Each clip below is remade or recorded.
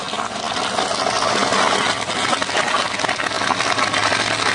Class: recorded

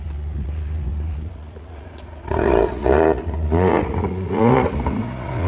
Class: remade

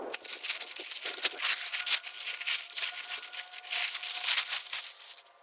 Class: recorded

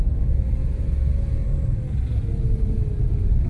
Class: recorded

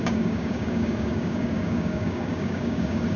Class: remade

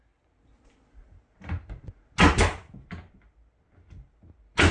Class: recorded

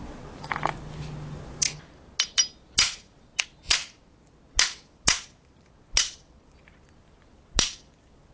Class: recorded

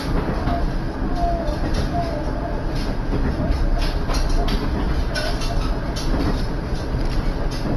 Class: recorded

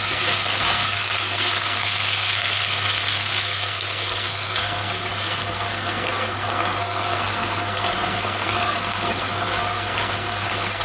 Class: remade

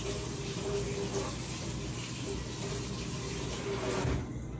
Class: recorded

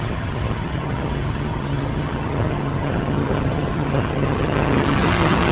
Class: remade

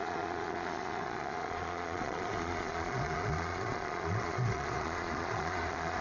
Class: remade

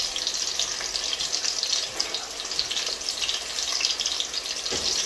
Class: recorded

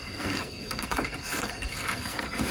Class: remade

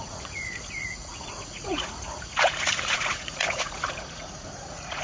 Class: remade